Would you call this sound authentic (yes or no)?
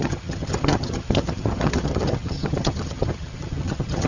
no